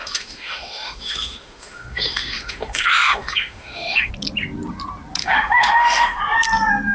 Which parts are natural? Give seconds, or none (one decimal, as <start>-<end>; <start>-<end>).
4.1-5.2; 6.2-6.9